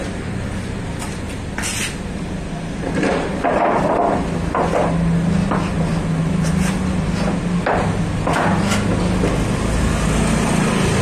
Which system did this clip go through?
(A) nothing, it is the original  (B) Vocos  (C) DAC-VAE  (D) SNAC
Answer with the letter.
A